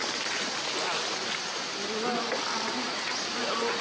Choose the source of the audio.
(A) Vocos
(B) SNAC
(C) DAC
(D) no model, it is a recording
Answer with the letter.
D